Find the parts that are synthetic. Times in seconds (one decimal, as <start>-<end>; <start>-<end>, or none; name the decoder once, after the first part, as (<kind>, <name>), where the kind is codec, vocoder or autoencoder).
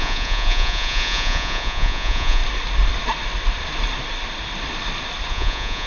0.0-2.4 (vocoder, Vocos); 5.3-5.9